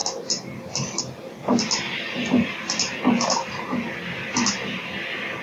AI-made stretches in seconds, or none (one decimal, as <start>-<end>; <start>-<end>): none